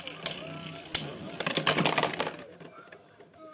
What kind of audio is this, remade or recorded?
recorded